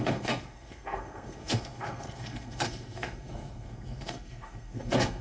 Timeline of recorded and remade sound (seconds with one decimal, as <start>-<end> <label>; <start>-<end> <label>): 0.0-5.2 remade